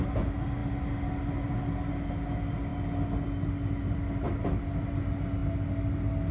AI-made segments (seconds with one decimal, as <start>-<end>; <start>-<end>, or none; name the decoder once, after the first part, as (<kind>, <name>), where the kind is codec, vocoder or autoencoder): none